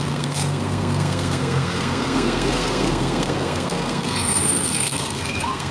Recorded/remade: remade